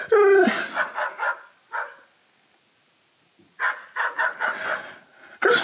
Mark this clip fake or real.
real